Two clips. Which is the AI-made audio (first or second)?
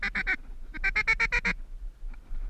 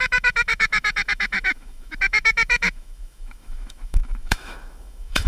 second